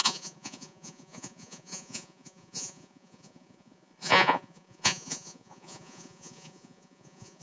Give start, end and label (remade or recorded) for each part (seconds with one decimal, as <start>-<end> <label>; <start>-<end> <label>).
0.0-7.4 remade